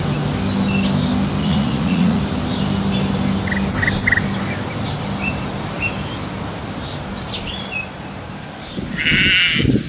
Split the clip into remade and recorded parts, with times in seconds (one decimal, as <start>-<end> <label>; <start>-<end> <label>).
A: 0.0-1.4 recorded; 1.4-2.2 remade; 2.2-9.9 recorded